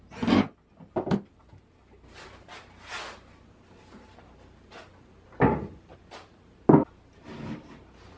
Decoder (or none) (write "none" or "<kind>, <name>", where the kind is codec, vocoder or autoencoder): none